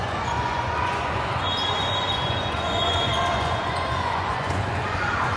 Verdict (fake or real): fake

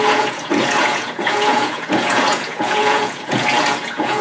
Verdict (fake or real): fake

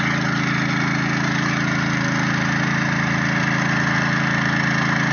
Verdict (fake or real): real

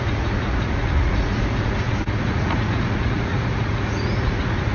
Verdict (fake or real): fake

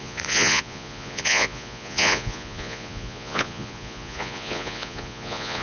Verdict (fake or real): fake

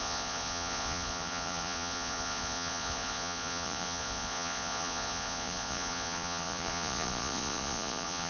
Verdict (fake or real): fake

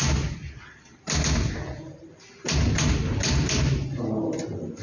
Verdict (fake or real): real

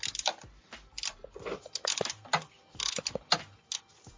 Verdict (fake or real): real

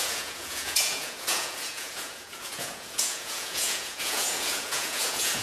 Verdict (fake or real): fake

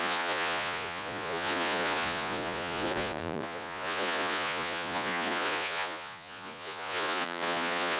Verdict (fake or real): fake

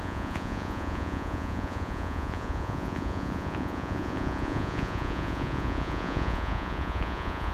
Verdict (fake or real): fake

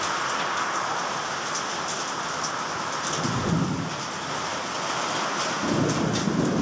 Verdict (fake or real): real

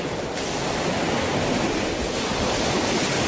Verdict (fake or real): real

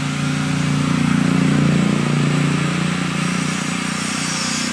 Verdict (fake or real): real